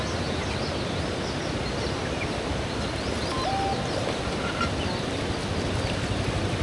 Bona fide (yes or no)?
yes